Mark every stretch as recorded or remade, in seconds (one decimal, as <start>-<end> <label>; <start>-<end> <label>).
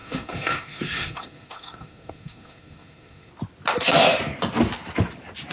0.0-3.3 remade; 3.3-5.5 recorded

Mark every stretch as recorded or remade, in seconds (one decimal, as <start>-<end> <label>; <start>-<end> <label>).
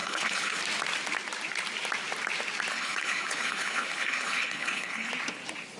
0.0-0.6 remade; 0.6-2.7 recorded; 2.7-5.1 remade; 5.1-5.8 recorded